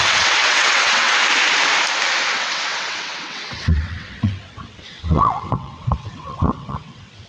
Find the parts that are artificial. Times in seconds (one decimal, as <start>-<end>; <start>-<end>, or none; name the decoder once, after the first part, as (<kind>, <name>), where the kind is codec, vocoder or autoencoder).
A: 0.0-1.2 (vocoder, WaveNeXt); 2.3-7.3